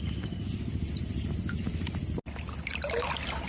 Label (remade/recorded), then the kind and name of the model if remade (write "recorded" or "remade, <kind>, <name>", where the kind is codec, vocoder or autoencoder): recorded